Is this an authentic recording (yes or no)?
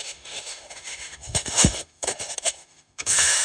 no